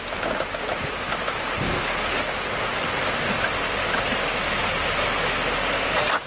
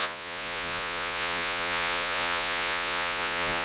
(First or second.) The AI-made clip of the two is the second